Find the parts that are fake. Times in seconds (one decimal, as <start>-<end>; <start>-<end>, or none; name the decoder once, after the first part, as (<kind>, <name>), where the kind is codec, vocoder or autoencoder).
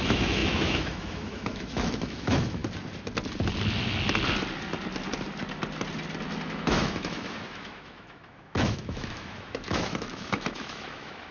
0.0-2.6 (autoencoder, DAC-VAE); 6.5-11.3